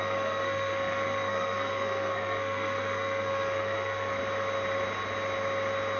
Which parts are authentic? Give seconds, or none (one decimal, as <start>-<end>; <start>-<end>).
4.2-6.0